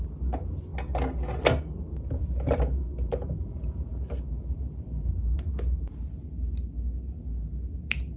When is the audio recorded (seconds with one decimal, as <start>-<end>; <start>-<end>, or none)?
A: 0.0-2.2; 5.4-8.2